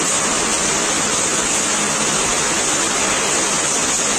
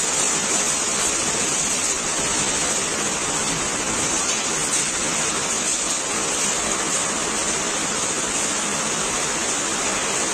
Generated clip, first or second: second